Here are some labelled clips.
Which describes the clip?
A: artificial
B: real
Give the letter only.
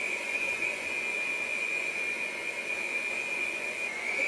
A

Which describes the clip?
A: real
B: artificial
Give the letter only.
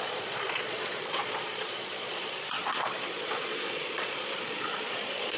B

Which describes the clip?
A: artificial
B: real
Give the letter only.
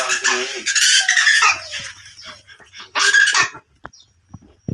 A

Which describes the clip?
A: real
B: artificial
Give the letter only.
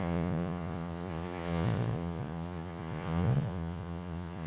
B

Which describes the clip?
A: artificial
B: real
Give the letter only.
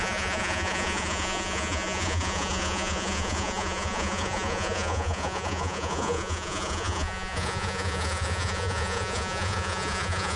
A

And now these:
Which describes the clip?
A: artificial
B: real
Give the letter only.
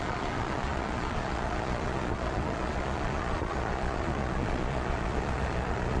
A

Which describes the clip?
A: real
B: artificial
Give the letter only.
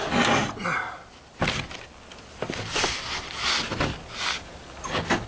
A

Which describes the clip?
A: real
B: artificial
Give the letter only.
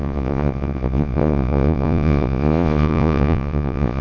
B